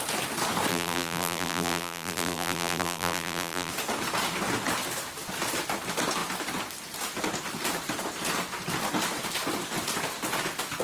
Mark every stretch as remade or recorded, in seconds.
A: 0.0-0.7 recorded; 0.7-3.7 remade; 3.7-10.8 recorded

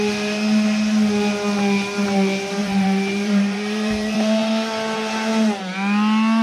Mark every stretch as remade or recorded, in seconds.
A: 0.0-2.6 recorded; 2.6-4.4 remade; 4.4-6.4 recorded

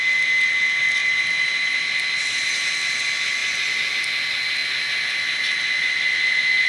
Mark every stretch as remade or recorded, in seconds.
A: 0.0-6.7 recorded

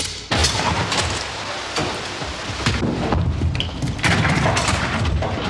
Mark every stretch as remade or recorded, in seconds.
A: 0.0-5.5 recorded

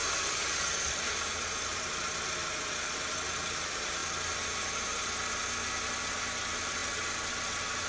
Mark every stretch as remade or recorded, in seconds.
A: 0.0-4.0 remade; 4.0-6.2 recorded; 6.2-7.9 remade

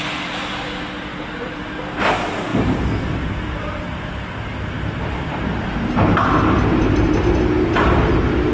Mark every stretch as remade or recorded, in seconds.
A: 0.0-1.1 recorded; 1.1-1.8 remade; 1.8-8.5 recorded